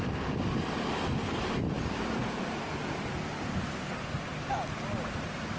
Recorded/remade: recorded